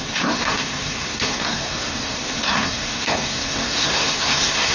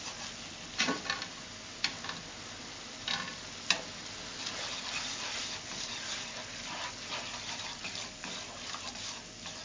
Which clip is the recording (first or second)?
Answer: second